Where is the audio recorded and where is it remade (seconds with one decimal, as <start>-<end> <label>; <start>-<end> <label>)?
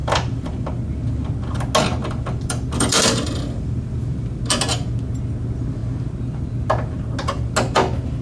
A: 0.0-0.7 remade; 0.7-2.0 recorded; 2.0-4.4 remade; 4.4-8.2 recorded